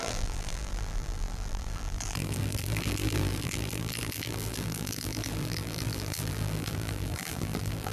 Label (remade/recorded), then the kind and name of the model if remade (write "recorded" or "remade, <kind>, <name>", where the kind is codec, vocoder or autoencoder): remade, vocoder, BigVGAN v2